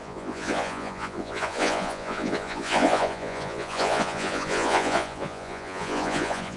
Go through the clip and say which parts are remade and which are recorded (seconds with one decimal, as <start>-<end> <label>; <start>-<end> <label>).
0.0-6.6 remade